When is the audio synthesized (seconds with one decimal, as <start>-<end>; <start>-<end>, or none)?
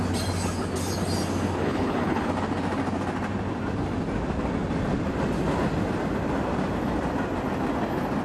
1.6-2.3